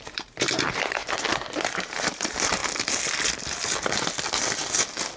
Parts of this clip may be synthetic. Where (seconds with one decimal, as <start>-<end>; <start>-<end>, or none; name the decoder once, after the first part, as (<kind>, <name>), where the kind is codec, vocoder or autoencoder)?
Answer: 0.0-1.0 (vocoder, BigVGAN v2); 1.6-2.6